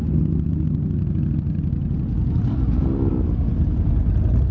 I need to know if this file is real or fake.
real